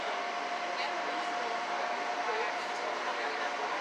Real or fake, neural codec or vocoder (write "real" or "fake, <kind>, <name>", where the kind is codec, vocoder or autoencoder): real